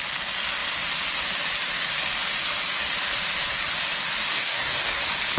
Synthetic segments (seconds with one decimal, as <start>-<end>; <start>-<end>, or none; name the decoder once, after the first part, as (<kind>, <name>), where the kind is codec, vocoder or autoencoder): 4.3-5.0 (codec, DAC)